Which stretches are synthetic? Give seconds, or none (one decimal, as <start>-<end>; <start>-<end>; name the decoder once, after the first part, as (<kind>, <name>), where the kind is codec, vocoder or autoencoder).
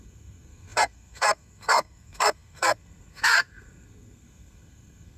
0.0-5.2 (codec, SNAC)